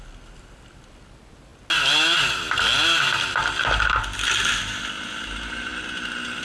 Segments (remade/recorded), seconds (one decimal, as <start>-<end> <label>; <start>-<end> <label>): 0.0-6.4 recorded